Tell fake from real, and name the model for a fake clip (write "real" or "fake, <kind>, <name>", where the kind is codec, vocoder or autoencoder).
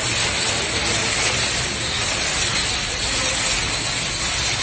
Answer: real